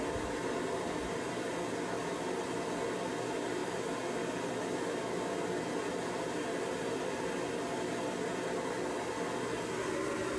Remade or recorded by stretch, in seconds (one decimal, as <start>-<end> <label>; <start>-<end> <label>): 0.0-10.4 recorded